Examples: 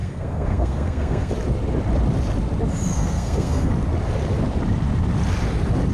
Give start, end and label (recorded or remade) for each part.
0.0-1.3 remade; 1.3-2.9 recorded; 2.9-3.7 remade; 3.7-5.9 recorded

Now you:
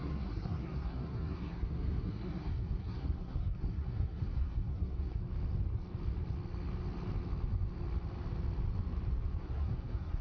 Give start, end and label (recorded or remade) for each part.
0.0-5.2 remade; 5.2-9.4 recorded; 9.4-10.2 remade

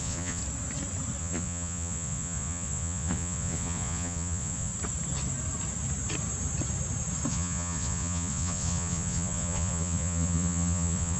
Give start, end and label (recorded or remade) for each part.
0.0-0.4 remade; 0.4-1.2 recorded; 1.2-4.7 remade; 4.7-7.3 recorded; 7.3-11.2 remade

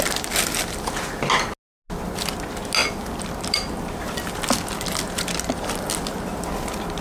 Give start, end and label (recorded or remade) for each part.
0.0-2.8 recorded; 2.8-4.2 remade; 4.2-7.0 recorded

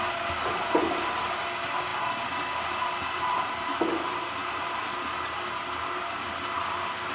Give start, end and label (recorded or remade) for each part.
0.0-7.1 recorded